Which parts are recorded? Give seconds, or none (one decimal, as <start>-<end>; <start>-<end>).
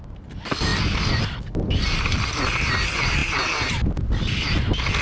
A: 0.0-5.0